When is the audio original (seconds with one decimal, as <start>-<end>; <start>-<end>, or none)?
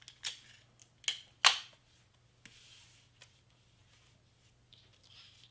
0.0-5.5